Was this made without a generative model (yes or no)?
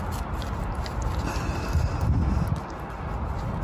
yes